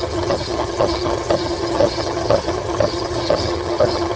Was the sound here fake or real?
fake